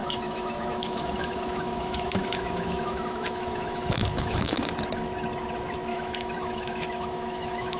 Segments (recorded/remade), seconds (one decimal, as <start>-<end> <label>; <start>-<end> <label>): 0.0-4.7 remade; 4.7-5.9 recorded; 5.9-7.8 remade